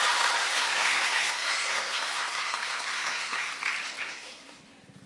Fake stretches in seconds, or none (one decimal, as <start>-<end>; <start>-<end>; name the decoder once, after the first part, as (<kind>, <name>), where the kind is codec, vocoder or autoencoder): 0.4-3.5 (codec, SNAC); 4.0-4.6